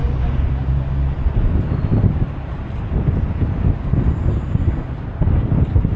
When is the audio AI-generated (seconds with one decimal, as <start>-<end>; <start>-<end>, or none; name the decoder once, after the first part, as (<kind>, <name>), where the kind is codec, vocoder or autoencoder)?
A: none

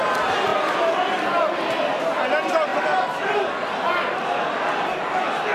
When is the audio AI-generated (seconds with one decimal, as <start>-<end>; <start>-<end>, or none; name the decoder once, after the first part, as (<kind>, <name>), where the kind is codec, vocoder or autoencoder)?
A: none

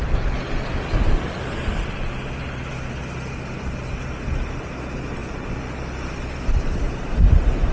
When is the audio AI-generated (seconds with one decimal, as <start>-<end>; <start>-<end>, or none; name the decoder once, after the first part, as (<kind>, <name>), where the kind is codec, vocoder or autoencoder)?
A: none

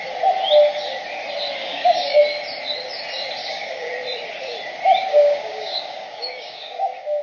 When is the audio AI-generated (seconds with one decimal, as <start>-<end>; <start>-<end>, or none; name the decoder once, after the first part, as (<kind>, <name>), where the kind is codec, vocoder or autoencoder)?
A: 1.6-2.2 (codec, DAC); 3.4-3.9; 5.1-7.2

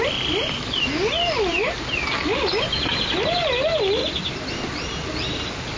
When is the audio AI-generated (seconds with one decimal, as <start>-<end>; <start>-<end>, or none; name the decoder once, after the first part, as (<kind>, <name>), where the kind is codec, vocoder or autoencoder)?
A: none

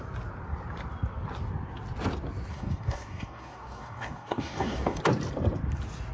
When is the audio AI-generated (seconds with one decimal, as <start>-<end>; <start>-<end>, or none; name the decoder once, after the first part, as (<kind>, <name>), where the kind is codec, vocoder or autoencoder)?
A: 2.5-5.0 (codec, DAC)

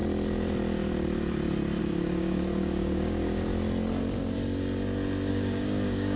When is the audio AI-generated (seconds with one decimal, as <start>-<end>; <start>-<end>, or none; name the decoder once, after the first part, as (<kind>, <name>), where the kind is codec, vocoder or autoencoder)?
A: 1.8-3.5 (codec, DAC); 5.3-6.2

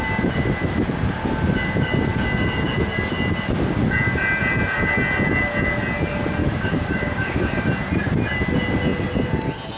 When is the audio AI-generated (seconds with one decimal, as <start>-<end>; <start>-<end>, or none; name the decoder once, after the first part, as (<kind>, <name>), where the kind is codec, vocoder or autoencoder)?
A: 6.4-7.6 (codec, DAC)